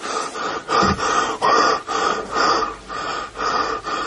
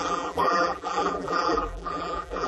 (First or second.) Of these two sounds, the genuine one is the first